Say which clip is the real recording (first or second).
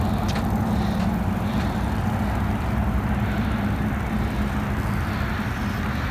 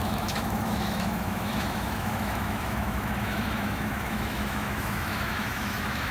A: first